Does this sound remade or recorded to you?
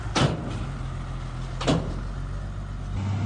recorded